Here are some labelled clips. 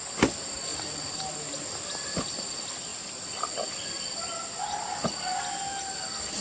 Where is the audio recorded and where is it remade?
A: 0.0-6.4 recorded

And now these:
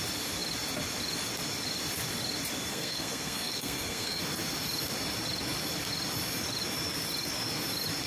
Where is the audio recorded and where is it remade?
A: 0.0-2.7 recorded; 2.7-4.2 remade; 4.2-8.1 recorded

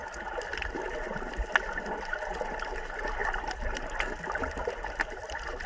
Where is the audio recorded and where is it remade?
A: 0.0-5.7 recorded

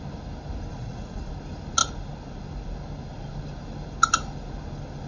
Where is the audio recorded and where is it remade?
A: 0.0-0.7 recorded; 0.7-1.3 remade; 1.3-5.1 recorded

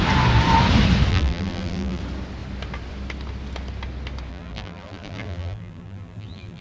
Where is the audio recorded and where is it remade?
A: 0.0-1.1 recorded; 1.1-2.0 remade; 2.0-4.3 recorded; 4.3-6.6 remade

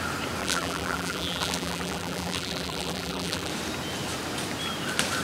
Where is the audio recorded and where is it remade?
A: 0.0-0.4 recorded; 0.4-3.5 remade; 3.5-5.2 recorded

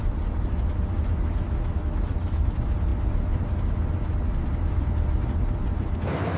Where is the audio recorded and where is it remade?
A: 0.0-6.4 recorded

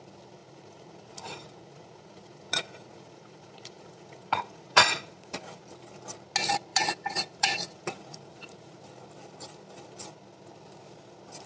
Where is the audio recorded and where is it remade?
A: 0.0-0.4 recorded; 0.4-5.6 remade; 5.6-6.7 recorded; 6.7-8.8 remade; 8.8-11.5 recorded